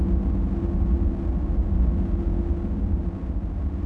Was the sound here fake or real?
real